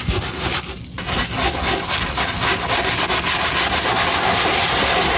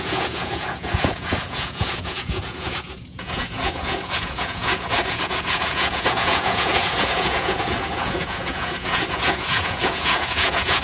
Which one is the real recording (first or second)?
first